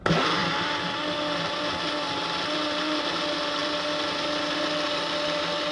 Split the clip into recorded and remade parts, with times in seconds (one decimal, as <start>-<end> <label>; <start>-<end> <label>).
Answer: 0.0-0.4 recorded; 0.4-1.0 remade; 1.0-5.7 recorded